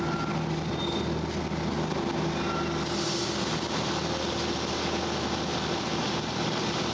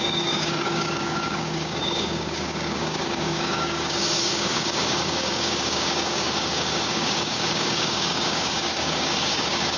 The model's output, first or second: second